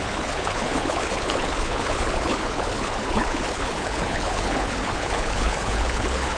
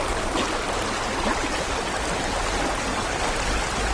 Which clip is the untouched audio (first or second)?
second